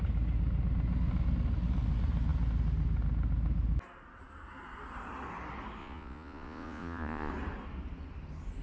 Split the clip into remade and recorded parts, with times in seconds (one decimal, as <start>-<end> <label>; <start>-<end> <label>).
0.0-5.8 recorded; 5.8-7.3 remade; 7.3-8.6 recorded